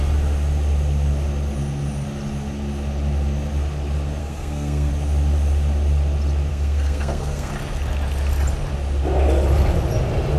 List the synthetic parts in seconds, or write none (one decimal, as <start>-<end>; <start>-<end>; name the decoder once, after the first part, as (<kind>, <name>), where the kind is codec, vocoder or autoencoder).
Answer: 4.2-4.9 (codec, SNAC); 6.5-7.5